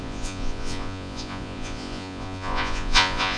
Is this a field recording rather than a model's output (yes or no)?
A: no